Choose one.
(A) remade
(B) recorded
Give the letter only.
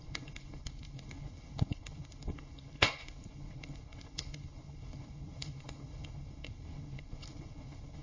A